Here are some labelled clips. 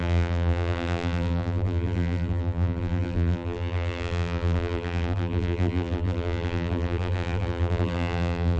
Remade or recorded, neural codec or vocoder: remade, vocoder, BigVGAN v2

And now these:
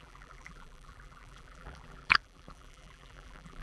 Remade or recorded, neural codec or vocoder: remade, vocoder, BigVGAN v2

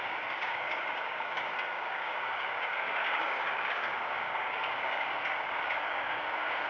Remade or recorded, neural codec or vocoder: remade, codec, DAC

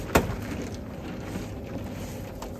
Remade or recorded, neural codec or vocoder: recorded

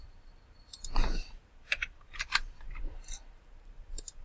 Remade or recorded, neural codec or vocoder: remade, vocoder, BigVGAN v2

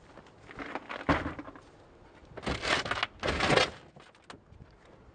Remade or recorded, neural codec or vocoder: recorded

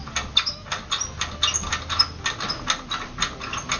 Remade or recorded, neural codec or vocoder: recorded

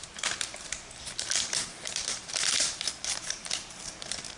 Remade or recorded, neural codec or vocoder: remade, vocoder, BigVGAN v2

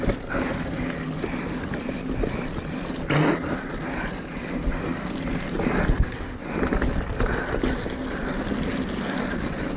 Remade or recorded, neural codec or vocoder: recorded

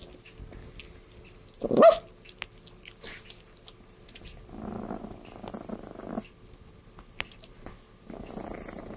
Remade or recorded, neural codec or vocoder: recorded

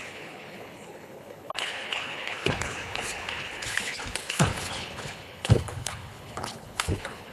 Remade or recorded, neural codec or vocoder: remade, codec, HILCodec